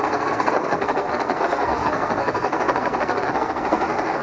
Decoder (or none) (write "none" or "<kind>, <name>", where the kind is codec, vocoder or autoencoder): codec, SNAC